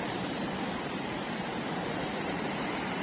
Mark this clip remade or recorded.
remade